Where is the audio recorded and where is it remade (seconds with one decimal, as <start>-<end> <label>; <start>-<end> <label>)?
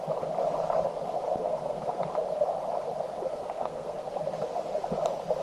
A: 0.0-1.4 recorded; 1.4-2.0 remade; 2.0-3.3 recorded; 3.3-4.1 remade; 4.1-5.4 recorded